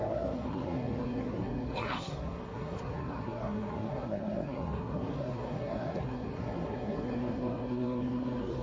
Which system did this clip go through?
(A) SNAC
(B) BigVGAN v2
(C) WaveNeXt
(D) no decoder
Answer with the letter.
A